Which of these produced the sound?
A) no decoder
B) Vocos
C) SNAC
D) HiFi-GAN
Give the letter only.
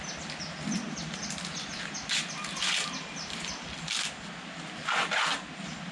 A